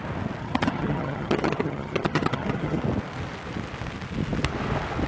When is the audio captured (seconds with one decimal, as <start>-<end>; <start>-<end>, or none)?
0.0-0.4; 2.8-5.1